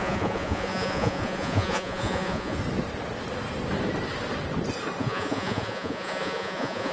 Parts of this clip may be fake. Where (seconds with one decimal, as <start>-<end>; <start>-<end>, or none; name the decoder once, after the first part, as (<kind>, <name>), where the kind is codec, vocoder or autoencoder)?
0.0-2.6 (vocoder, Vocos); 5.0-6.9